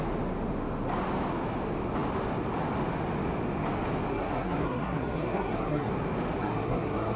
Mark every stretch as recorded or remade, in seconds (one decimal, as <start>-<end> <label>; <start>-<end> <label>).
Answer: 0.0-4.1 recorded; 4.1-5.9 remade; 5.9-6.4 recorded; 6.4-7.2 remade